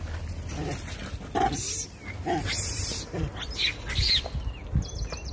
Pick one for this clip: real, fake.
real